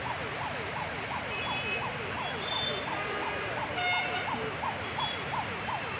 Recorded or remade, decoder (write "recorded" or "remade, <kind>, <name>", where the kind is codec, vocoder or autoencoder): recorded